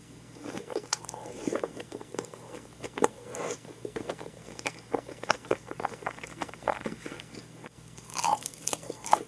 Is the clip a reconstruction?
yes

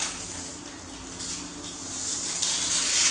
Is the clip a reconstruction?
no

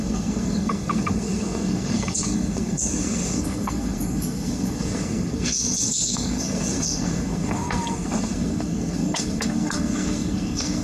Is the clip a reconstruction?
yes